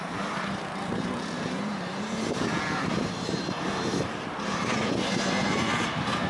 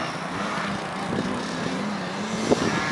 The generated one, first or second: first